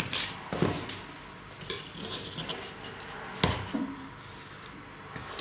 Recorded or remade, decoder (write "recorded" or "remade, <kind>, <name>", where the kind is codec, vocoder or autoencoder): recorded